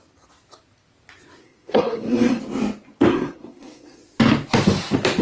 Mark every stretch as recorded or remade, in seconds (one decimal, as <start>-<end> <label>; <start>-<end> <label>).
0.0-1.4 recorded; 1.4-2.4 remade; 2.4-3.1 recorded; 3.1-4.0 remade; 4.0-5.2 recorded